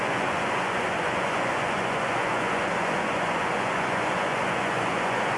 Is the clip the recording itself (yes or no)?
no